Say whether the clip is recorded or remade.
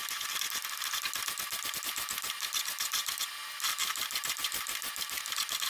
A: recorded